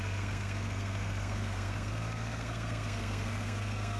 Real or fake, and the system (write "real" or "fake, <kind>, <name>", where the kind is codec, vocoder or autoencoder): fake, codec, SNAC